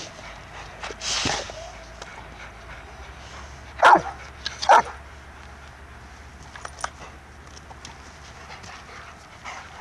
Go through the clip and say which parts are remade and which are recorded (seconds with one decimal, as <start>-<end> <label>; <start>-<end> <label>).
0.0-9.8 recorded